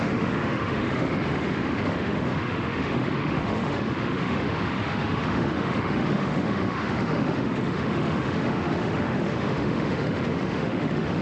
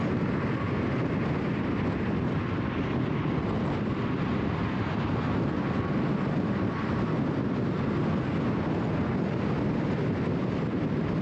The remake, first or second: first